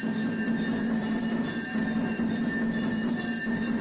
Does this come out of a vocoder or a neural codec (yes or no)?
yes